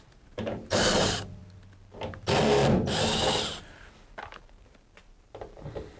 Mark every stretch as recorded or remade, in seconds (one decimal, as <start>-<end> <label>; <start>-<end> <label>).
0.0-1.4 remade; 1.4-5.0 recorded; 5.0-6.0 remade